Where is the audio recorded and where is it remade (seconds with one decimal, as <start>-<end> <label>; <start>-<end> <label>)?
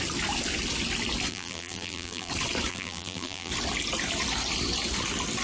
0.0-1.3 recorded; 1.3-2.3 remade; 2.3-2.7 recorded; 2.7-3.5 remade; 3.5-5.4 recorded